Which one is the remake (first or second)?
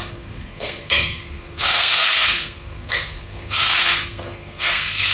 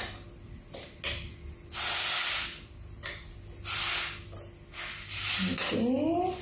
first